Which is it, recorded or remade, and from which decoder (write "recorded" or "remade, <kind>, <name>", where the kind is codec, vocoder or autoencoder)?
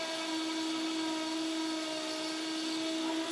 recorded